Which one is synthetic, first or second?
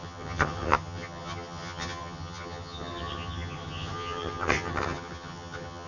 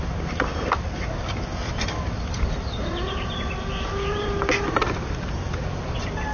first